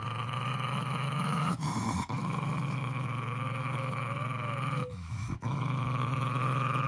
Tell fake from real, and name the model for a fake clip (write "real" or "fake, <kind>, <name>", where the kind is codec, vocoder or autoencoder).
fake, autoencoder, DAC-VAE